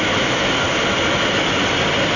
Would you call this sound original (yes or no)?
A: yes